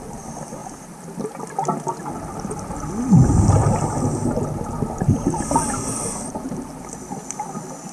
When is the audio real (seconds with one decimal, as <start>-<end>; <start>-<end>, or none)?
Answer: 0.0-7.9